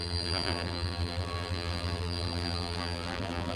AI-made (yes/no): yes